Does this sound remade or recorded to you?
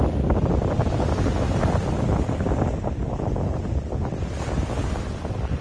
recorded